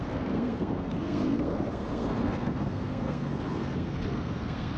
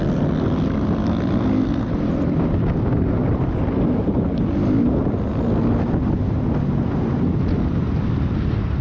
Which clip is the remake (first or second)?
first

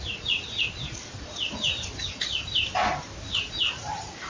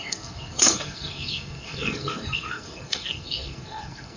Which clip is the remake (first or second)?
second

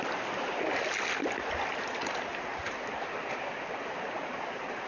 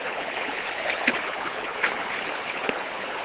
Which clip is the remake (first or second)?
second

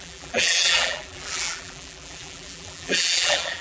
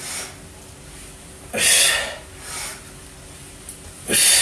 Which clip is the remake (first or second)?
first